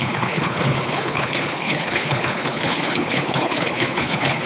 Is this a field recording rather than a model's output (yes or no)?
no